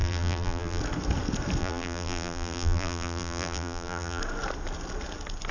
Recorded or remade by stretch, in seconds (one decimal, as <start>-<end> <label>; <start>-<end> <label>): 0.0-0.8 remade; 0.8-1.6 recorded; 1.6-4.2 remade; 4.2-5.5 recorded